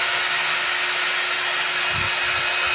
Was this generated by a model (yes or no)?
no